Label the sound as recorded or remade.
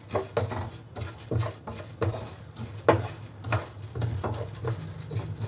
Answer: recorded